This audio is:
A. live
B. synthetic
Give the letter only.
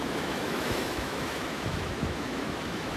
B